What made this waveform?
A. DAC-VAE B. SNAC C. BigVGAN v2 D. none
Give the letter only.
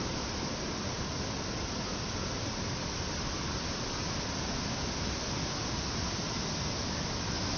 D